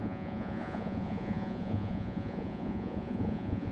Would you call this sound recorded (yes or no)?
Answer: no